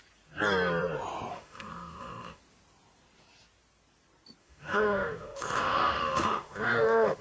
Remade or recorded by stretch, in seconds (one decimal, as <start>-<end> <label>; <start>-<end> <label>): 0.0-1.3 recorded; 1.3-2.4 remade; 2.4-4.4 recorded; 4.4-7.2 remade

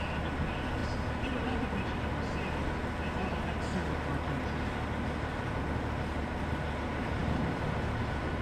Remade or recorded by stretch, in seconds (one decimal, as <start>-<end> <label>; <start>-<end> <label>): 0.0-8.4 recorded

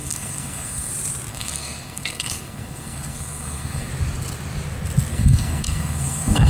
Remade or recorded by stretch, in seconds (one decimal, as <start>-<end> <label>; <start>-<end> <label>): 0.0-0.9 remade; 0.9-1.3 recorded; 1.3-3.9 remade; 3.9-5.1 recorded; 5.1-6.5 remade

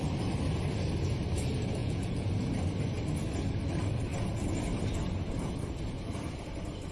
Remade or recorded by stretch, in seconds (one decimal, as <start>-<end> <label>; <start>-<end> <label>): 0.0-1.8 recorded; 1.8-2.3 remade; 2.3-6.9 recorded

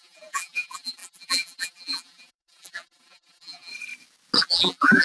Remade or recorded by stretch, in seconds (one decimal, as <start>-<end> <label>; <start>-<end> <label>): 0.0-3.7 remade; 3.7-4.4 recorded; 4.4-5.0 remade

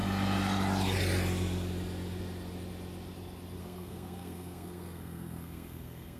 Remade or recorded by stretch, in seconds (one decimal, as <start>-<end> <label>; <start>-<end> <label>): 0.0-3.6 recorded; 3.6-6.2 remade